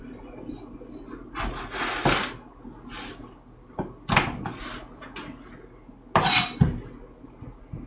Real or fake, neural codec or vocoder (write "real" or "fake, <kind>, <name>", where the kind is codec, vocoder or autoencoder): real